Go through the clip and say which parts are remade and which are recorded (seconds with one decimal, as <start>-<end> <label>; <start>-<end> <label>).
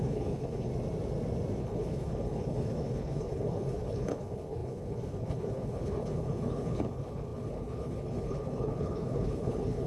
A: 0.0-0.7 remade; 0.7-1.6 recorded; 1.6-9.9 remade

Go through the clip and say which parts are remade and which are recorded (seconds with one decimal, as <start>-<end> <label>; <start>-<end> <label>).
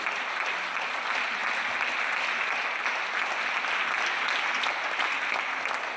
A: 0.0-6.0 recorded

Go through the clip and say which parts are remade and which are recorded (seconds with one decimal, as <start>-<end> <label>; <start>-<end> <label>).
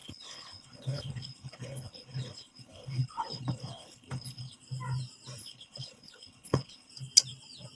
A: 0.0-4.6 remade; 4.6-5.4 recorded; 5.4-6.9 remade; 6.9-7.7 recorded